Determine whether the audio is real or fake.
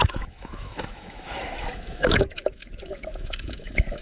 fake